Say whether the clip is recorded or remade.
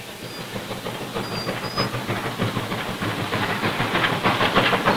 recorded